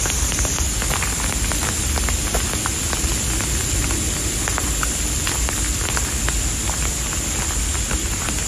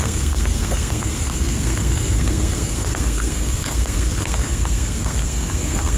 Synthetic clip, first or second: second